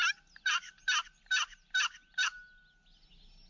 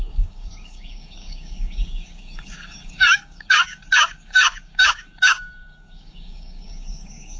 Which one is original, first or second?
first